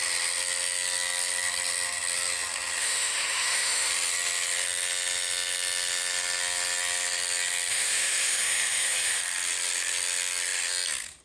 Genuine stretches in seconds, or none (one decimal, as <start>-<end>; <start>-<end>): 0.0-2.8; 3.9-7.7; 9.2-11.2